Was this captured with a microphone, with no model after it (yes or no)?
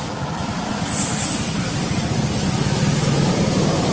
yes